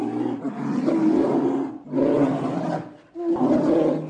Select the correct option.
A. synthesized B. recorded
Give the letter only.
B